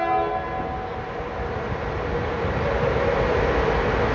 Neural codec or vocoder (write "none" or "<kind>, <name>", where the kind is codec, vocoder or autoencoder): none